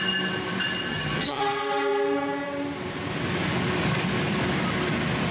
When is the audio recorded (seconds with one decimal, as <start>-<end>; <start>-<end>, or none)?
0.0-0.9; 1.4-5.3